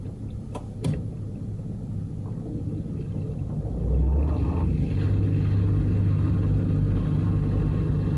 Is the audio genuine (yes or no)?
yes